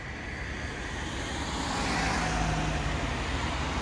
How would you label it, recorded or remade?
recorded